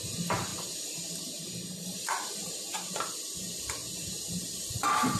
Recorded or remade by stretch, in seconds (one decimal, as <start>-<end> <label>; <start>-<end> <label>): 0.0-5.2 remade